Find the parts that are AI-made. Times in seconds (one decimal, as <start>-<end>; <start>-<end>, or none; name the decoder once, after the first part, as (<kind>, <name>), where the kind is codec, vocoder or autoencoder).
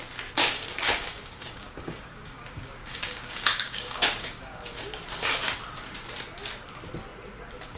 0.4-5.0 (codec, DAC)